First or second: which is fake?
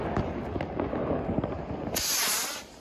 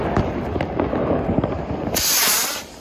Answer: second